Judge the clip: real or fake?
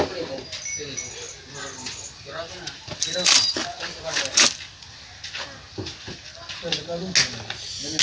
real